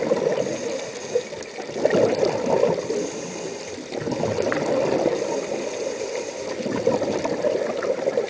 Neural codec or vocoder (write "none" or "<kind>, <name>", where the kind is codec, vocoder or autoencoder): none